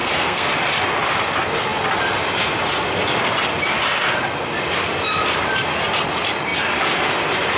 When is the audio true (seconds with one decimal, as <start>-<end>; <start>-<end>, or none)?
0.5-7.6